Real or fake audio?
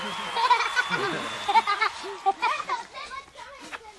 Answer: real